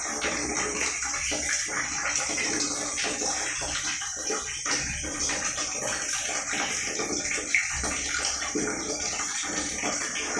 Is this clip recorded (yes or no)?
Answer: no